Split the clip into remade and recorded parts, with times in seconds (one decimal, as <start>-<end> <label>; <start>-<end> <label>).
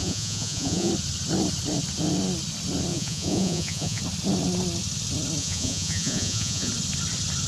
0.0-0.9 remade; 0.9-2.9 recorded; 2.9-4.0 remade; 4.0-5.4 recorded; 5.4-6.7 remade; 6.7-7.5 recorded